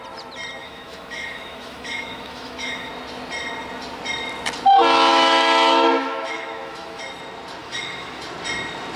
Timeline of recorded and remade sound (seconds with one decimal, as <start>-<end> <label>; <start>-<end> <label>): 0.0-0.6 recorded; 0.6-2.9 remade; 2.9-5.1 recorded; 5.1-7.0 remade; 7.0-7.6 recorded; 7.6-8.2 remade; 8.2-9.0 recorded